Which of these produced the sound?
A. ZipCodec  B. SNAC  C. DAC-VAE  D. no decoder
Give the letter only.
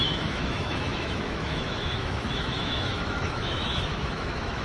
C